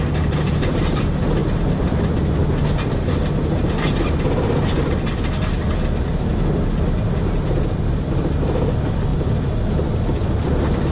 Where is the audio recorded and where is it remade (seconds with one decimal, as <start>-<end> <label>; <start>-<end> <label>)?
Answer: 0.0-10.9 recorded

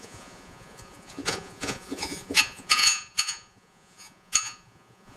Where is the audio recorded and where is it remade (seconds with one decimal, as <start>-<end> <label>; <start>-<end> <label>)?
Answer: 0.0-5.2 remade